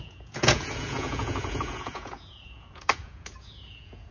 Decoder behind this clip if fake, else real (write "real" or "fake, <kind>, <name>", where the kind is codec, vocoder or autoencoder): fake, vocoder, Vocos